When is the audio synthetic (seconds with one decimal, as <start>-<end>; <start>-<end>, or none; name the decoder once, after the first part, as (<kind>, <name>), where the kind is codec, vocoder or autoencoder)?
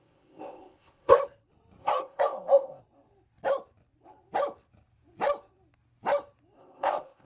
0.0-1.2 (codec, ZipCodec); 1.8-2.8; 6.6-7.2